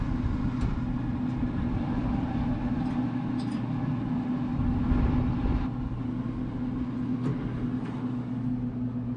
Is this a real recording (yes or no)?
yes